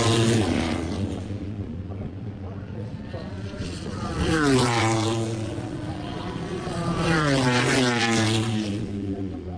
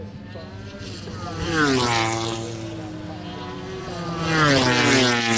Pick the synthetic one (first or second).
first